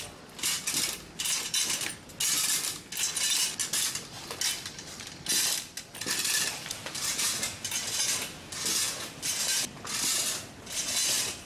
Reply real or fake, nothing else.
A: real